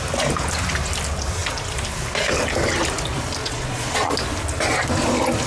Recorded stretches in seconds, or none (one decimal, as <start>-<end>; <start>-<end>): 0.0-3.4; 4.1-5.5